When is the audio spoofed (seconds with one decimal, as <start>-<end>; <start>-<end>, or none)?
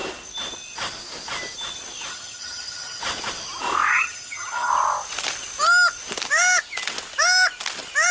2.1-3.0; 3.9-4.7